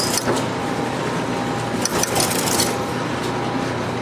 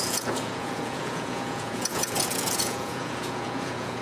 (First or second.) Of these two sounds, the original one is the first